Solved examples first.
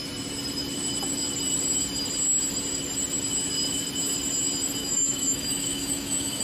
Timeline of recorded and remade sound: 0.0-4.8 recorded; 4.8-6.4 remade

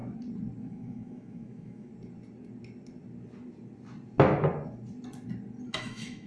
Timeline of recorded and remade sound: 0.0-0.6 recorded; 0.6-1.9 remade; 1.9-5.7 recorded; 5.7-6.3 remade